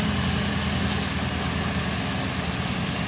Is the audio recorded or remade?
recorded